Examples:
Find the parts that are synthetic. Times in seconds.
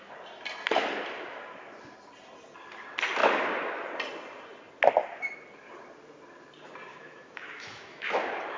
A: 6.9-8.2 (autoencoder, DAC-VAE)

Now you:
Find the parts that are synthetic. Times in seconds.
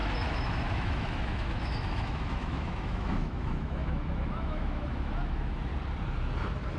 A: 0.0-5.7 (autoencoder, DAC-VAE)